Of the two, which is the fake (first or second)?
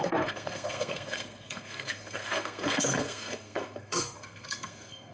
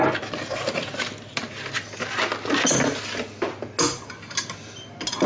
first